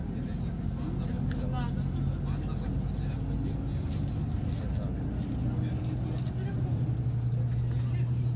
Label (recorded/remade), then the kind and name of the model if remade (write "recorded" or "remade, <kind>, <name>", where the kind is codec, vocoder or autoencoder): recorded